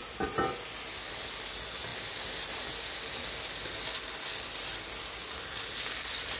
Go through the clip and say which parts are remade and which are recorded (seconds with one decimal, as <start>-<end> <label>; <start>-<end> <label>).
0.0-6.4 recorded